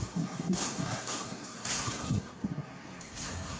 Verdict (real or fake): fake